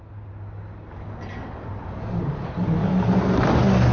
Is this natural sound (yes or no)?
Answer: yes